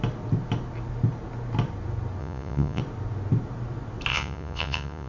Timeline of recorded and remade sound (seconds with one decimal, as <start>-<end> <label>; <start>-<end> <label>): 0.0-2.2 recorded; 2.2-2.8 remade; 2.8-4.1 recorded; 4.1-5.1 remade